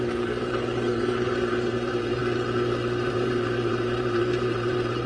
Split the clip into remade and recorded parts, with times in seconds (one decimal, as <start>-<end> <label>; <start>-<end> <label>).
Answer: 0.0-2.2 remade; 2.2-3.1 recorded; 3.1-5.1 remade